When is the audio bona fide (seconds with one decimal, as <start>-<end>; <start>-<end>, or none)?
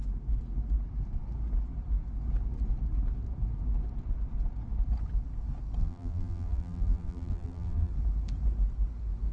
0.0-5.8; 7.9-9.3